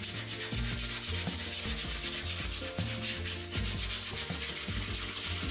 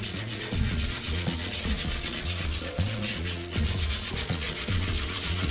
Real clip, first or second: first